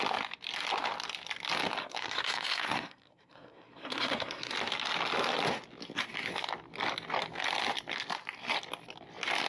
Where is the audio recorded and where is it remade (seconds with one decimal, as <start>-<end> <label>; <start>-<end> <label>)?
0.0-1.8 recorded; 1.8-4.5 remade; 4.5-9.5 recorded